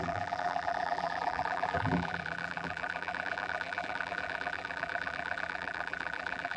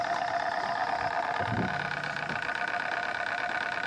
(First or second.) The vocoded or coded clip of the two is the first